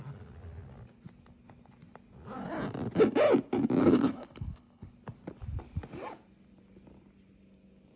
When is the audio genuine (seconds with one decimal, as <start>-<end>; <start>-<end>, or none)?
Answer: 0.0-3.8; 4.9-8.0